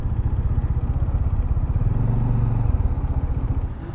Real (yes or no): yes